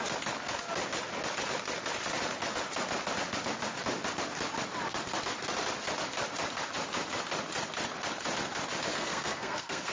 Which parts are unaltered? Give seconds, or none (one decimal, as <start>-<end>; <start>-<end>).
0.0-8.9